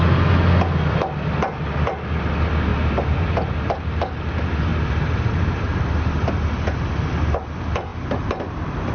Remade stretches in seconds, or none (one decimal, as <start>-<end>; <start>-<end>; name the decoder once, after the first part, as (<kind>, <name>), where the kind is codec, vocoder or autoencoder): 2.7-4.0 (vocoder, BigVGAN v2); 4.7-6.1

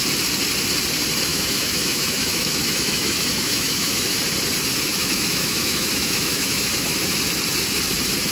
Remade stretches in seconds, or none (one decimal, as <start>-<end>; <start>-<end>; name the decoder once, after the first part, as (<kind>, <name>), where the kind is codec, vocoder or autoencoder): 1.3-4.2 (autoencoder, DAC-VAE); 4.9-7.0

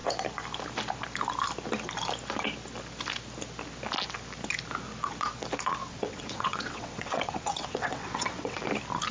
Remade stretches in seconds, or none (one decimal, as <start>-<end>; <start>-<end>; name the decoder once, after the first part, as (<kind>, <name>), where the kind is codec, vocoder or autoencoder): 5.8-8.6 (vocoder, WaveNeXt)

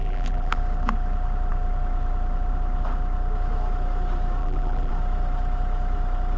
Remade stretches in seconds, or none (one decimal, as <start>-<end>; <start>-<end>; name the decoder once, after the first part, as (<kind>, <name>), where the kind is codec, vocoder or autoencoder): 0.0-0.6 (vocoder, BigVGAN v2); 4.4-4.9